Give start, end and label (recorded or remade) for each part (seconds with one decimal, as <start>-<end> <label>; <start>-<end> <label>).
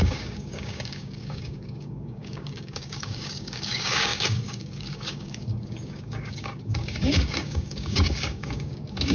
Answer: 0.0-9.1 remade